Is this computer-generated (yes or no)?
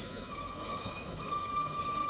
yes